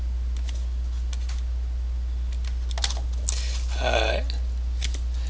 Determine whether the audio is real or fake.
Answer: real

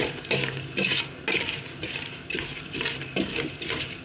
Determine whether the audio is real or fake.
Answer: real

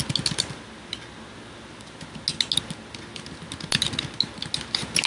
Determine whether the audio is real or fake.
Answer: real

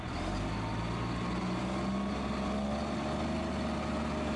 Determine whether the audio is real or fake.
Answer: real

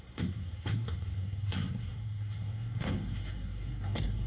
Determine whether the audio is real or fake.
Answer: fake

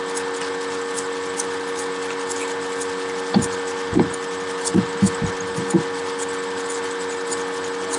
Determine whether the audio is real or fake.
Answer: real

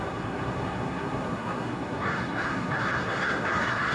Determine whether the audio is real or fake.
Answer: fake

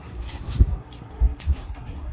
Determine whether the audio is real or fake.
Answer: fake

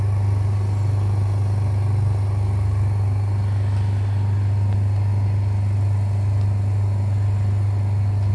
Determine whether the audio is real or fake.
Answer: real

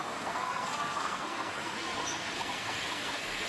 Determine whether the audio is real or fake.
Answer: fake